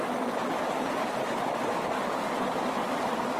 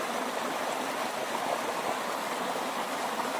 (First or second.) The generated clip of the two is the second